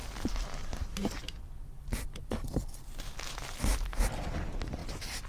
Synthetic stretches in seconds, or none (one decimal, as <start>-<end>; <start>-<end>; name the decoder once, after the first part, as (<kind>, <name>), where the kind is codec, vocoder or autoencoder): none